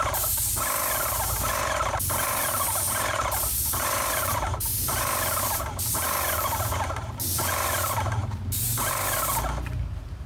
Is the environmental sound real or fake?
fake